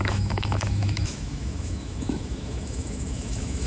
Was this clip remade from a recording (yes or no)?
yes